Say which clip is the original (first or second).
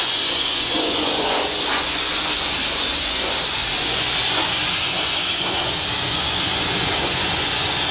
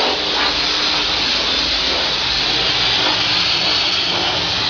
second